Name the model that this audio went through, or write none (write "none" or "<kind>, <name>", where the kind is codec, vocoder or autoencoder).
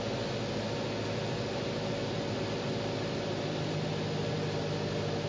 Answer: none